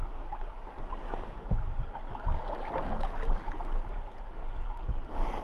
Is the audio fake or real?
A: fake